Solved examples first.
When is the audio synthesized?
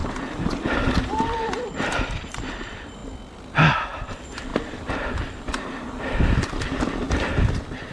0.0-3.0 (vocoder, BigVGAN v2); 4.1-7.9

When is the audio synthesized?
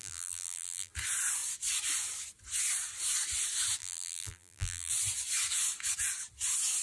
0.0-0.9 (vocoder, BigVGAN v2); 3.8-4.9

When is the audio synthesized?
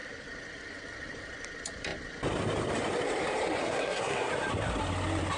3.6-4.3 (codec, SNAC)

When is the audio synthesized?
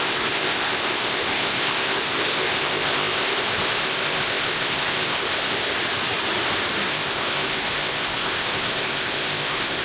0.0-5.7 (codec, ZipCodec); 6.9-9.8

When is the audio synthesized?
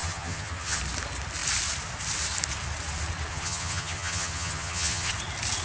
0.0-0.8 (vocoder, HiFi-GAN); 3.3-5.1